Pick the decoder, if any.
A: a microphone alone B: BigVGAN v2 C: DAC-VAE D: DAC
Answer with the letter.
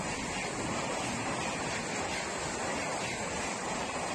A